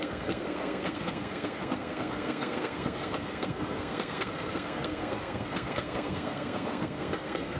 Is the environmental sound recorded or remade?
remade